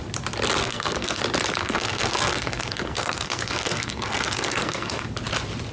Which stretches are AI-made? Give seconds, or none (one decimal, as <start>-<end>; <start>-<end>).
0.6-1.2; 1.6-5.0